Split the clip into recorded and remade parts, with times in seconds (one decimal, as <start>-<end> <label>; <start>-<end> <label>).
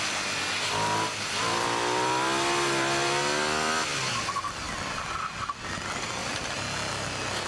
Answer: 0.0-7.5 recorded